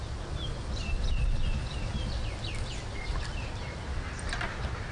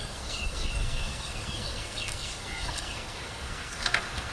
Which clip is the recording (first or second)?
first